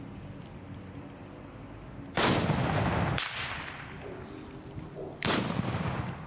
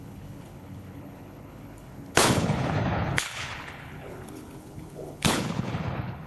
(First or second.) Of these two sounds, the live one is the first